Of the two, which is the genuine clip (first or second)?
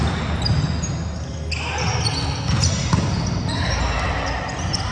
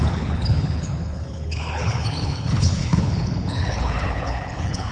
first